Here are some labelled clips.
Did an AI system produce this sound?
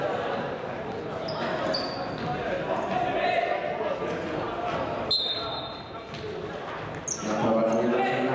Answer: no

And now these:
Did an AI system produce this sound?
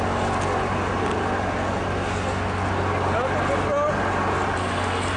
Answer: no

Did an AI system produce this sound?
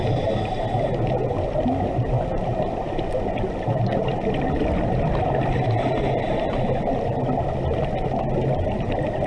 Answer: no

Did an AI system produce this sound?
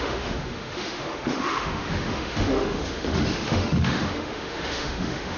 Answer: yes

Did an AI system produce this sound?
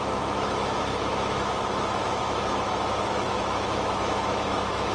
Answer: yes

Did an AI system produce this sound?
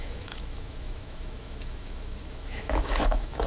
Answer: yes